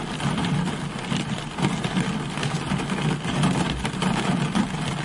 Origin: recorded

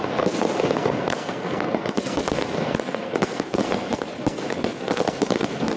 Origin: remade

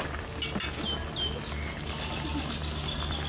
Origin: recorded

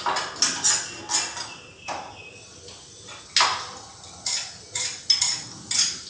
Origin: recorded